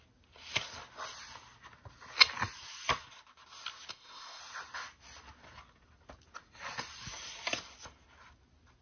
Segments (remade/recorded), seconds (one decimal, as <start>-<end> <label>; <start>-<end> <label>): 0.0-3.9 recorded; 3.9-4.4 remade; 4.4-8.8 recorded